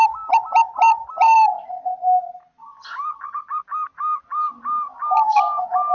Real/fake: real